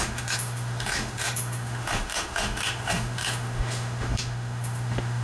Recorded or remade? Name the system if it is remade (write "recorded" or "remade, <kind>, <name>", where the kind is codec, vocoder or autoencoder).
remade, autoencoder, DAC-VAE